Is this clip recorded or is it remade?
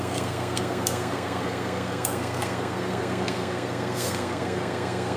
remade